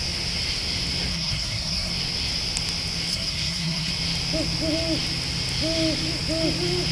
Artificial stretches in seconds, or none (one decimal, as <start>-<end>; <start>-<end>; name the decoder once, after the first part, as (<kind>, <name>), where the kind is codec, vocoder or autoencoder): 1.1-1.9 (codec, SNAC); 3.1-3.9